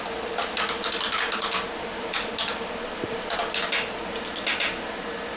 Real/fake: real